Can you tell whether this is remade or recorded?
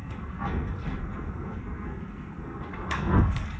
remade